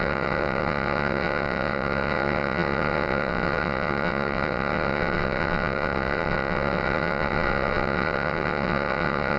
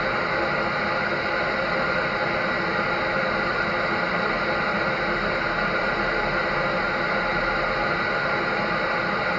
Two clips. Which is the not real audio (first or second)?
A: first